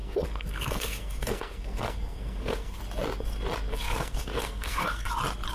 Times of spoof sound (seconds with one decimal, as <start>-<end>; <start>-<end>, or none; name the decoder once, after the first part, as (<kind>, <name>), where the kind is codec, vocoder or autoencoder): 0.0-2.8 (codec, SNAC); 3.7-5.1